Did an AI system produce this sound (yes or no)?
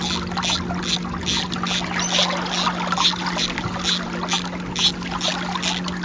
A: no